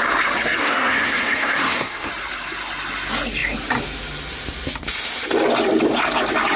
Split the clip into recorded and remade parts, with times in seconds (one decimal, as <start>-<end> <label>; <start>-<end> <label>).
0.0-0.6 recorded; 0.6-2.1 remade; 2.1-6.6 recorded